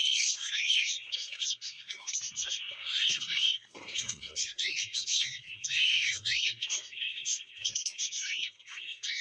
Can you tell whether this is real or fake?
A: fake